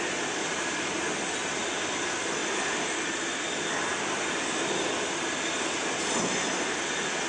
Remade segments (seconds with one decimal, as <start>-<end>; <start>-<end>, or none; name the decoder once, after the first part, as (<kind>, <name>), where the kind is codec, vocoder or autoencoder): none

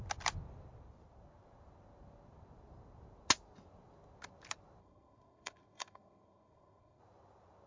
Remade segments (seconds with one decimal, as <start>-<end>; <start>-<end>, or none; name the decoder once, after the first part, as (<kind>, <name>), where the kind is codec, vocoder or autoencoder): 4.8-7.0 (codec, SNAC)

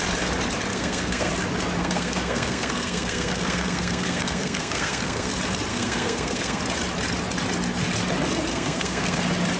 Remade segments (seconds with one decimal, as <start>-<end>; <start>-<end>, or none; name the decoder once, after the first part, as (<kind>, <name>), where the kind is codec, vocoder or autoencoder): 0.7-1.3 (codec, SNAC); 1.8-5.3; 5.7-6.6; 8.5-9.2

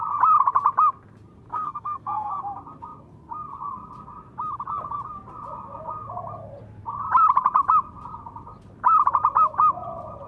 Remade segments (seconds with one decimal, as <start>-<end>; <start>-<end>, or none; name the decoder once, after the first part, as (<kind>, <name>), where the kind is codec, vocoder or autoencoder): 1.5-2.3 (codec, SNAC)

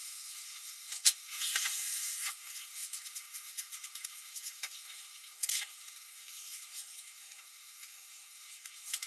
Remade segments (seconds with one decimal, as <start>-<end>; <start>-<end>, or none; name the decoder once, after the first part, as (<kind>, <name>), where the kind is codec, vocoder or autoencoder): 0.0-9.1 (codec, SNAC)